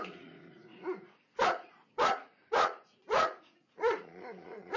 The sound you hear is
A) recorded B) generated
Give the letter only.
B